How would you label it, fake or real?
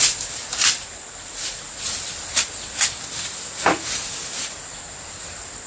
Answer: real